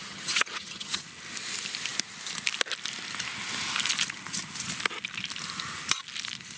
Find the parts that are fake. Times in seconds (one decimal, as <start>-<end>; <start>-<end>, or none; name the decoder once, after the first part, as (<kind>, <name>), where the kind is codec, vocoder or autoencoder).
0.0-1.0 (vocoder, HiFi-GAN)